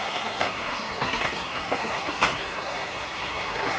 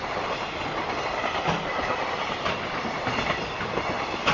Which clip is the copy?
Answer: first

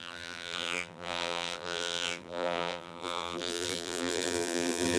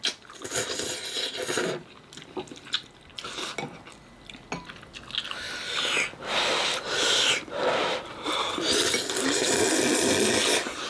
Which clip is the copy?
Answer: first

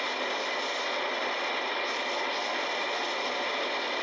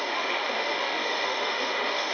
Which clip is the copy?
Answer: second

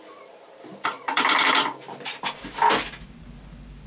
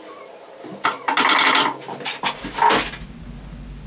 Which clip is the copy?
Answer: first